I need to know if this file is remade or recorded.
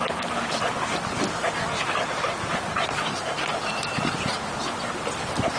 recorded